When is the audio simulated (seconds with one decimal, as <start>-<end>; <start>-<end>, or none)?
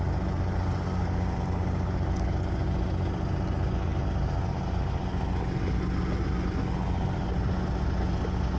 none